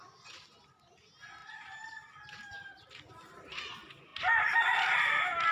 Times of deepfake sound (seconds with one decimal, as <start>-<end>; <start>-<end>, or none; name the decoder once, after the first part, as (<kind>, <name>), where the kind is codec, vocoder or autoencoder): 1.4-3.0 (vocoder, BigVGAN v2)